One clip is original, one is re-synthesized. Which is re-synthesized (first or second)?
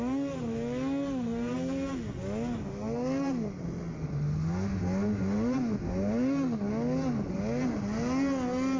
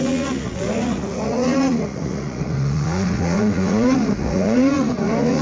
second